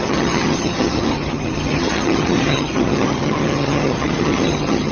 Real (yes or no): no